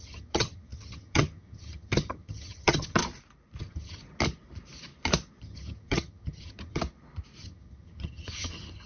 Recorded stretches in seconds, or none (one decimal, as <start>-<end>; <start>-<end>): 3.0-3.6; 4.0-5.4; 6.8-7.4